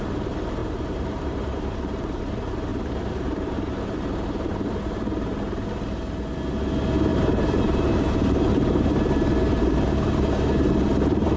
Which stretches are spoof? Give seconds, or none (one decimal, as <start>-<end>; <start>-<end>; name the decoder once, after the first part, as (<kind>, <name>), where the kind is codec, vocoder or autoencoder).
0.6-2.2 (vocoder, BigVGAN v2); 2.7-5.7; 7.1-8.7